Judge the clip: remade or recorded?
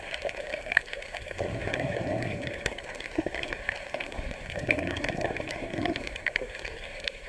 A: remade